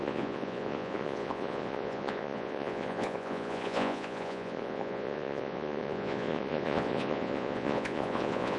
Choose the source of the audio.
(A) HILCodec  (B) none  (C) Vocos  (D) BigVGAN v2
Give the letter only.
C